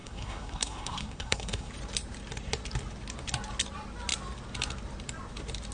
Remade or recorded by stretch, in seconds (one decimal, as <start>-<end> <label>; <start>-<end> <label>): 0.0-1.7 remade; 1.7-5.7 recorded